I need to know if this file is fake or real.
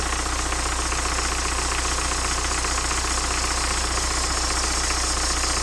real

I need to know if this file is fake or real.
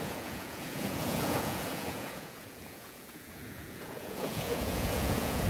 fake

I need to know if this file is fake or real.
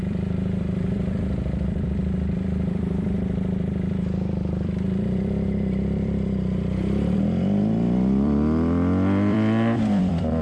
fake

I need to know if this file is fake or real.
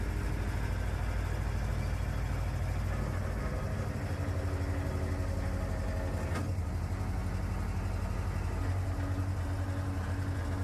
real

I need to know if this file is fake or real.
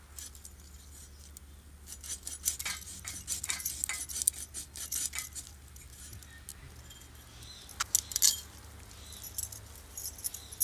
real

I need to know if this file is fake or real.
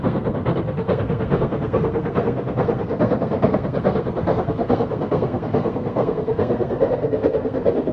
fake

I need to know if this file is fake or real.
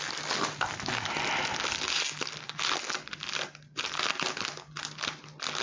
real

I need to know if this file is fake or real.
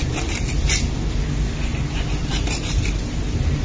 real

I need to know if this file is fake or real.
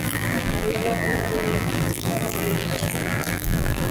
fake